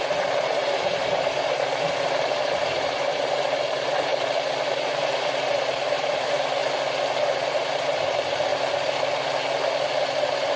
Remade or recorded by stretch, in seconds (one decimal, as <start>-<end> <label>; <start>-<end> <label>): 0.0-4.1 remade; 4.1-4.7 recorded; 4.7-6.6 remade; 6.6-7.1 recorded; 7.1-8.5 remade; 8.5-10.0 recorded; 10.0-10.6 remade